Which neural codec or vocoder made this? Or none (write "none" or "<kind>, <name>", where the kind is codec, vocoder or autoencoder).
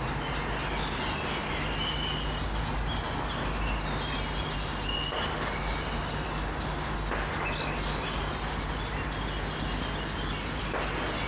none